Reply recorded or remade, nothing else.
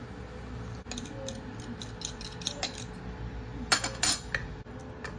recorded